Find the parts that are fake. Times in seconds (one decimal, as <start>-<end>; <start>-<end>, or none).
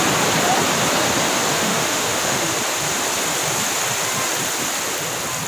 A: 1.6-2.5